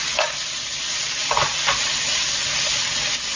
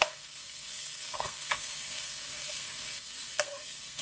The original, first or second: first